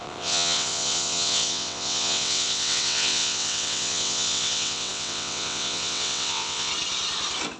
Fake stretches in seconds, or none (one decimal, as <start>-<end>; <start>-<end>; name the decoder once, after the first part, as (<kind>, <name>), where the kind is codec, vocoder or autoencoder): 0.0-6.7 (vocoder, WaveNeXt)

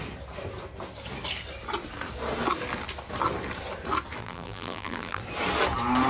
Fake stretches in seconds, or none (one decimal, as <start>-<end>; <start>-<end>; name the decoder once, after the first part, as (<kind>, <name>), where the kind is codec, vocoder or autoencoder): 4.2-5.2 (vocoder, BigVGAN v2)

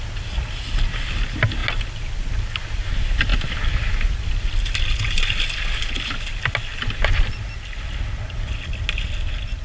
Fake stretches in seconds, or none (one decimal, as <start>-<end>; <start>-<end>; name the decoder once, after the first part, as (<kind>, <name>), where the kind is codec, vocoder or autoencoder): none

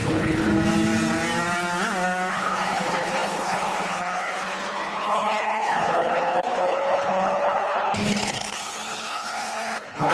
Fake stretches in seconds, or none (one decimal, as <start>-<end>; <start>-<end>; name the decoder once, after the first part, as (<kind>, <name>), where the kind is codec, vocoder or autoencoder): 0.0-0.5 (codec, HILCodec); 2.3-10.1

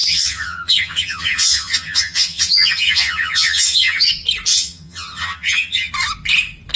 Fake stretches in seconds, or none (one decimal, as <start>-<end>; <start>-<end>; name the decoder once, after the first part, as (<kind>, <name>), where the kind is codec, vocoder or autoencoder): 0.0-4.1 (vocoder, HiFi-GAN); 4.5-5.9

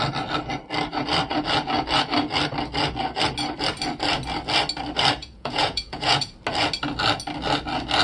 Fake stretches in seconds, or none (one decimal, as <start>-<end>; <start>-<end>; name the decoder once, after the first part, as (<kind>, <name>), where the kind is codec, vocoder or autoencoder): 5.2-6.3 (vocoder, Vocos)